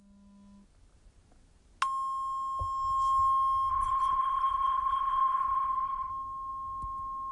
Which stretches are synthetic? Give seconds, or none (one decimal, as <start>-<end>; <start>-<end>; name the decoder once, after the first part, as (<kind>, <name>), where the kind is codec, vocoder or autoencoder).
3.7-6.1 (codec, HILCodec)